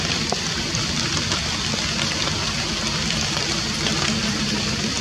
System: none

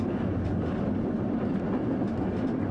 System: none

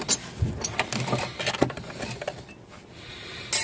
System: none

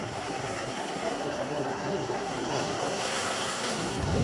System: codec, SNAC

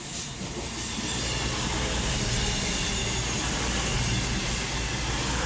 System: none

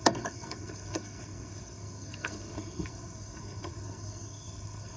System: codec, SNAC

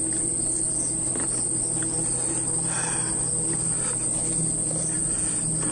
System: none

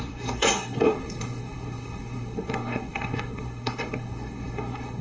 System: codec, SNAC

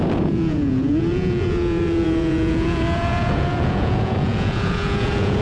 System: vocoder, Vocos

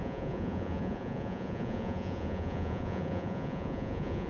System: vocoder, Vocos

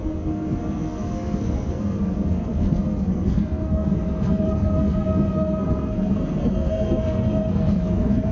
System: codec, SNAC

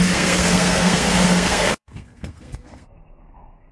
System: codec, SNAC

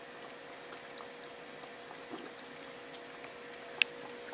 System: none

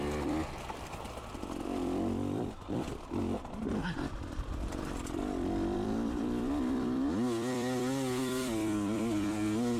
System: vocoder, BigVGAN v2